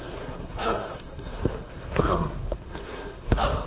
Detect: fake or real fake